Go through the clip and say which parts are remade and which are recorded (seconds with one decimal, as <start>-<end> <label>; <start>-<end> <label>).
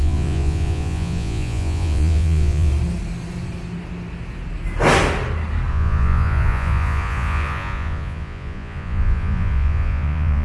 0.0-2.7 remade; 2.7-5.7 recorded; 5.7-10.4 remade